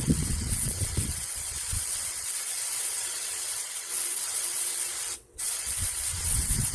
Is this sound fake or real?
fake